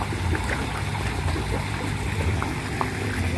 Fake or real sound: real